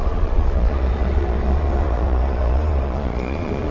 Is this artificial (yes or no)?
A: yes